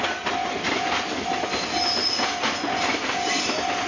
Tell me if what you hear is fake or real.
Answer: real